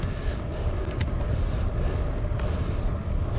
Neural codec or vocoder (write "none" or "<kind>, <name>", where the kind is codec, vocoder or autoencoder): none